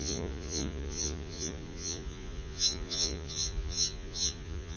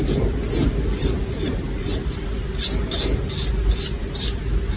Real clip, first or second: second